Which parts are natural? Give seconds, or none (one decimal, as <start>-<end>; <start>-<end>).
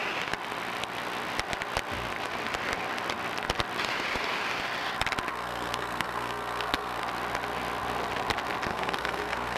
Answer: 0.0-5.3; 7.0-8.7